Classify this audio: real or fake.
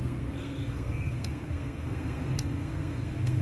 fake